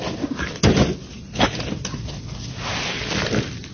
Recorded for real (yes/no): yes